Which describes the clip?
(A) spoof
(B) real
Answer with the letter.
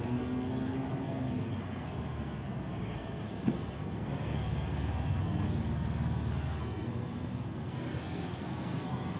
A